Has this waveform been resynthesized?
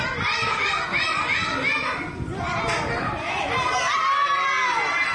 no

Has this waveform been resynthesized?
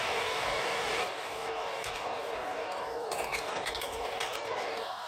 yes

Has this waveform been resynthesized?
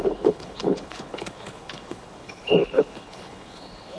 yes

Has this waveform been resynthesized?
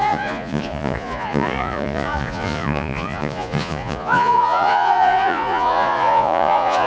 yes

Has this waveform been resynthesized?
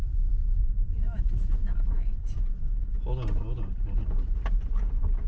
no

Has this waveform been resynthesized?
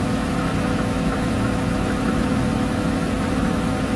yes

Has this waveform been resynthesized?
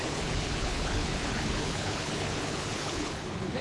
yes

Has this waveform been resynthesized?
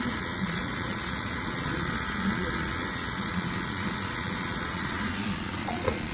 yes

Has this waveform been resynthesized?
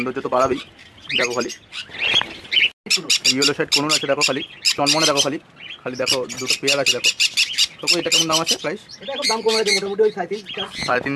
no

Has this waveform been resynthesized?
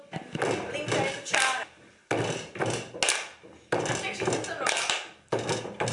no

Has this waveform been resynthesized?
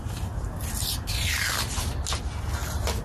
no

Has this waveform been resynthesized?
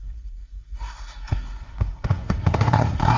yes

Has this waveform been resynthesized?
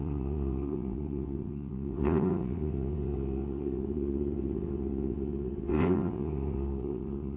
yes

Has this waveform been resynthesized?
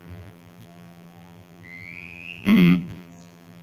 yes